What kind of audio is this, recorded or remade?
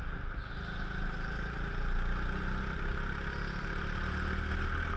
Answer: recorded